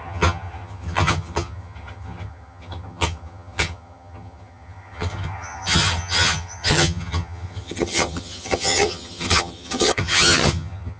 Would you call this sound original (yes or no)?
no